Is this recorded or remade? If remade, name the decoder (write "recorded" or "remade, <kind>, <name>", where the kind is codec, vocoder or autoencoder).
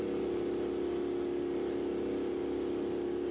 recorded